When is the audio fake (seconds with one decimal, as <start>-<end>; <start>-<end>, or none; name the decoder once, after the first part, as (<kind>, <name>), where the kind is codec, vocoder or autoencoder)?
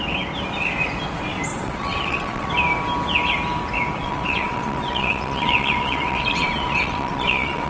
1.5-2.5 (vocoder, WaveNeXt); 4.0-7.7